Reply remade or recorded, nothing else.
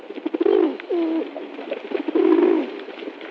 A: recorded